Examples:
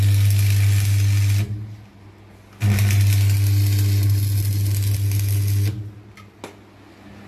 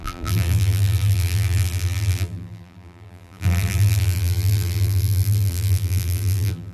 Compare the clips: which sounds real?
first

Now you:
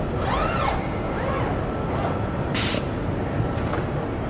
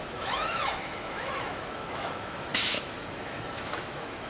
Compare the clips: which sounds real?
first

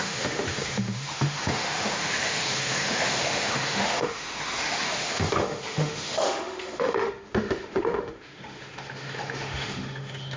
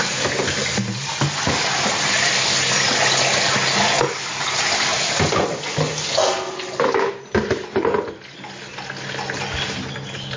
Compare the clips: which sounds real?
second